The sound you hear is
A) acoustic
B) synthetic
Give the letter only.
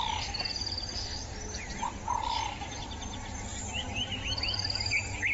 A